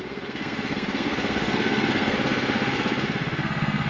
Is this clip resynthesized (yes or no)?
yes